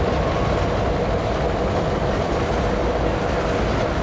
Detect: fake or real real